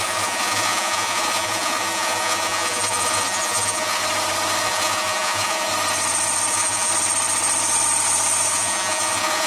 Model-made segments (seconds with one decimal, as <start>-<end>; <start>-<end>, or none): 0.0-4.0; 4.6-5.7; 6.5-6.9; 8.5-9.5